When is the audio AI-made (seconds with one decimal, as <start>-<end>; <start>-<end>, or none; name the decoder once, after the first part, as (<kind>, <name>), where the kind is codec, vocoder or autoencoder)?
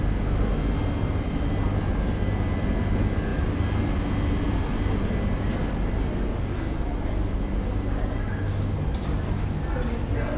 none